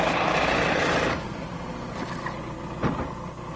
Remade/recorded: recorded